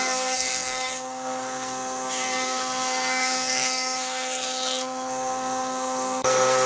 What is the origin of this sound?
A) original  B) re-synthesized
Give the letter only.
B